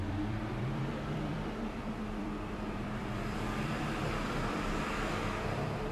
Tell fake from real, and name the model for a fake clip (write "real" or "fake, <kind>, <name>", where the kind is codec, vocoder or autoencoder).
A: fake, vocoder, BigVGAN v2